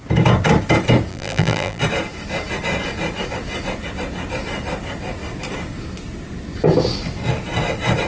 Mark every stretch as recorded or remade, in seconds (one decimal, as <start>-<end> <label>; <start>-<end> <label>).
0.0-1.1 recorded; 1.1-1.8 remade; 1.8-8.1 recorded